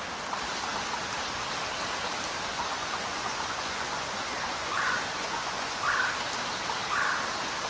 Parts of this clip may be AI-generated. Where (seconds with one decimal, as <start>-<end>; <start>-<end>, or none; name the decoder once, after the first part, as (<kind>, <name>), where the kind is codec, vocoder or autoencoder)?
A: 2.5-5.8 (vocoder, Vocos)